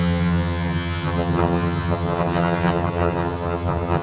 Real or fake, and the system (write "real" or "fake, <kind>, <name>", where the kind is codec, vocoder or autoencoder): fake, vocoder, HiFi-GAN